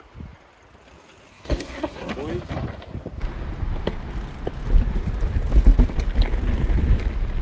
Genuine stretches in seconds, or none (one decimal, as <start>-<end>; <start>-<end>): 0.0-1.3; 2.1-7.4